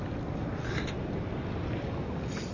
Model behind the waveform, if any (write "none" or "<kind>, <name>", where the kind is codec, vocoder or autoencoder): none